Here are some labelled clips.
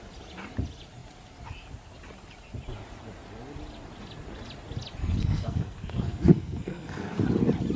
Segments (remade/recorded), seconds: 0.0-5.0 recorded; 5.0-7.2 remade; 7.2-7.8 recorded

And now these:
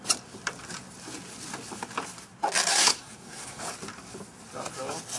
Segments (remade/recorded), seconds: 0.0-2.7 recorded; 2.7-3.6 remade; 3.6-5.2 recorded

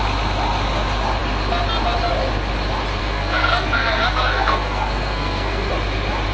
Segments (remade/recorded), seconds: 0.0-3.0 recorded; 3.0-5.7 remade; 5.7-6.3 recorded

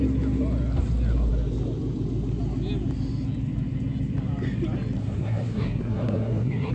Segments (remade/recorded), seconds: 0.0-5.0 recorded; 5.0-6.7 remade

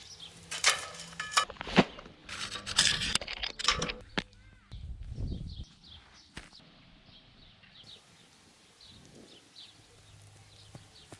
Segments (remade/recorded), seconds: 0.0-11.2 recorded

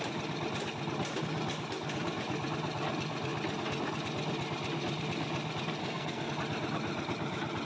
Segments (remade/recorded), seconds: 0.0-5.8 recorded; 5.8-6.3 remade; 6.3-7.6 recorded